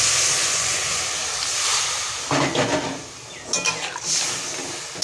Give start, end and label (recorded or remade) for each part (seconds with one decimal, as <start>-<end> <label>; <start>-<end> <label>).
0.0-0.4 recorded; 0.4-1.0 remade; 1.0-5.0 recorded